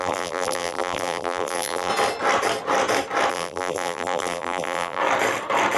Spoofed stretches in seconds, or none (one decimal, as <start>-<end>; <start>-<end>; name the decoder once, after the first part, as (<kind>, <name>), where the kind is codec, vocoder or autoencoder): 0.0-1.9 (vocoder, BigVGAN v2); 3.3-5.0